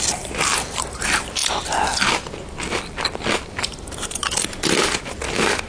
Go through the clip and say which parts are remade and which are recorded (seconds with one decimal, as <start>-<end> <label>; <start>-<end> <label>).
0.0-1.4 remade; 1.4-3.6 recorded; 3.6-5.7 remade